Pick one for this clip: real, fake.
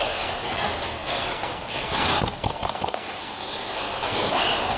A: fake